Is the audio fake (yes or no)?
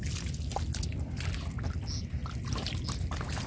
no